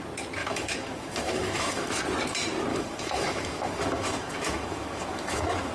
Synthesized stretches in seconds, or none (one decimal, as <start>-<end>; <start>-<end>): 0.4-2.0; 2.7-5.7